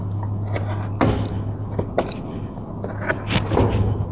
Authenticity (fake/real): real